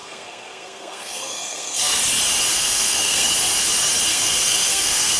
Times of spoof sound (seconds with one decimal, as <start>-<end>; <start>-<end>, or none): 0.0-2.0; 2.5-3.3; 4.1-5.2